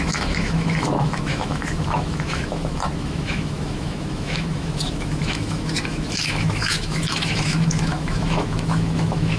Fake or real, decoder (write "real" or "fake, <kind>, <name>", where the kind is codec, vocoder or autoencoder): fake, autoencoder, DAC-VAE